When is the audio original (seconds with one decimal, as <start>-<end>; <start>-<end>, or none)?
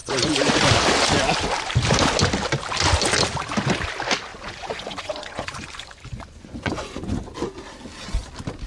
0.5-4.3; 7.3-8.7